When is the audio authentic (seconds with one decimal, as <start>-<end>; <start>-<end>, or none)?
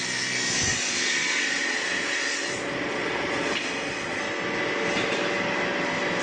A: 0.0-0.7; 4.2-6.2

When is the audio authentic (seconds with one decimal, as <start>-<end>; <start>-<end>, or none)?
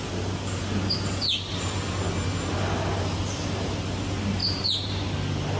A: 0.0-5.6